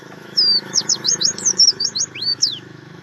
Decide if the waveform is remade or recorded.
remade